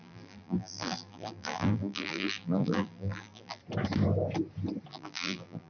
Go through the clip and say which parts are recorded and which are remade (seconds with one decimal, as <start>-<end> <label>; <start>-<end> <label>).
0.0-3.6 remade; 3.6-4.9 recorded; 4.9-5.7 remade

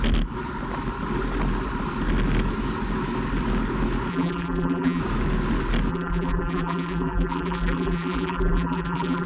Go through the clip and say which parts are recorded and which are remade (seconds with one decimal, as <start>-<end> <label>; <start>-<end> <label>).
0.0-4.1 recorded; 4.1-5.0 remade; 5.0-5.9 recorded; 5.9-9.3 remade

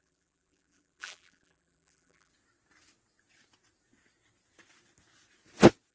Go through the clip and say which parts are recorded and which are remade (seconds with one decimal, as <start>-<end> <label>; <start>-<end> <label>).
0.0-2.3 remade; 2.3-5.9 recorded

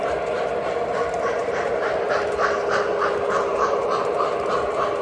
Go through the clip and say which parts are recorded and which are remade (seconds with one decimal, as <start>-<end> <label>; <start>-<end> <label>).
0.0-0.9 recorded; 0.9-2.1 remade; 2.1-2.9 recorded; 2.9-5.0 remade

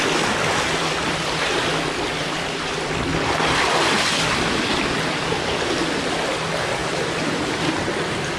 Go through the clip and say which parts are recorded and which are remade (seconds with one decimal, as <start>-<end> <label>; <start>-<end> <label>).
0.0-1.0 recorded; 1.0-1.6 remade; 1.6-2.2 recorded; 2.2-2.9 remade; 2.9-6.8 recorded; 6.8-7.7 remade; 7.7-8.4 recorded